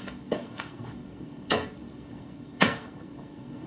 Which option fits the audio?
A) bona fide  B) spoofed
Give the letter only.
B